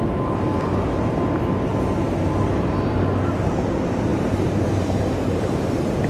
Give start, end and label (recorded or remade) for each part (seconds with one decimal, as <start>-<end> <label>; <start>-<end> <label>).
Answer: 0.0-1.7 recorded; 1.7-3.0 remade; 3.0-4.1 recorded; 4.1-6.1 remade